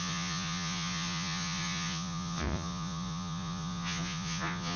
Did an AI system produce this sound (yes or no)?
yes